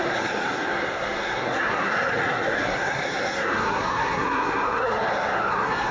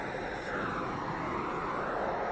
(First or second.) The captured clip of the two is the second